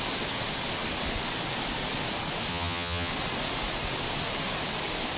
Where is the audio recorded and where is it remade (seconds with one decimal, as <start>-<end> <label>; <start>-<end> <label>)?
0.0-2.5 recorded; 2.5-3.1 remade; 3.1-5.2 recorded